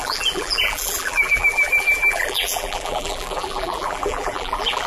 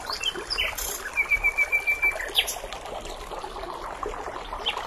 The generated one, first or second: first